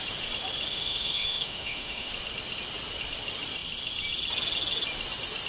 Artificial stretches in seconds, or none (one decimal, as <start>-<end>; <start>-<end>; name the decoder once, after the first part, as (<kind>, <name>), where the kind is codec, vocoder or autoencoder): 0.7-2.1 (autoencoder, DAC-VAE)